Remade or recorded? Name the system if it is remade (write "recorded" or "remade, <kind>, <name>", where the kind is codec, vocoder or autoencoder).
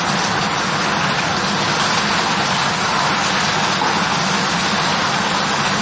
recorded